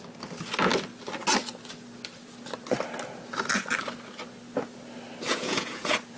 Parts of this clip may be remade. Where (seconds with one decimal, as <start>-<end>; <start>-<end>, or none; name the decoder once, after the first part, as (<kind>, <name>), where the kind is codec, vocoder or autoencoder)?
5.3-6.2 (vocoder, Vocos)